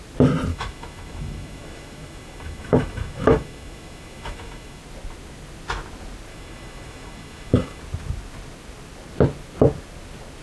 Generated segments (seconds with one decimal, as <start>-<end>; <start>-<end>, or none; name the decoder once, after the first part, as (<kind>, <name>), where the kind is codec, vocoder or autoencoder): 0.5-4.8 (autoencoder, DAC-VAE); 6.3-7.8